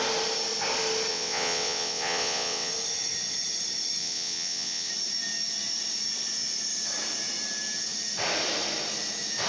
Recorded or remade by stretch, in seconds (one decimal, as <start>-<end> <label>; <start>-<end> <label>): 0.0-1.1 recorded; 1.1-2.7 remade; 2.7-4.0 recorded; 4.0-4.9 remade; 4.9-9.5 recorded